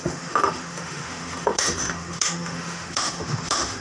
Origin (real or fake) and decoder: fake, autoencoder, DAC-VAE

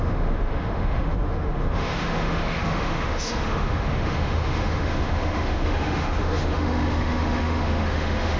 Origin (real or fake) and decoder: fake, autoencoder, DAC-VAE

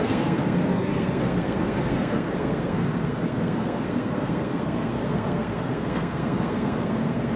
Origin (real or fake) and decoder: fake, codec, SNAC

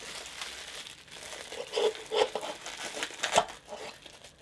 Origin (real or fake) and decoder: real